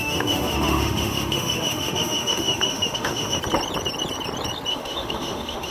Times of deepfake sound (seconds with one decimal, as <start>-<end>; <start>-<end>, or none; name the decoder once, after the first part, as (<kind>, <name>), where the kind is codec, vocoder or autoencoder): 0.0-3.4 (autoencoder, DAC-VAE); 4.7-5.7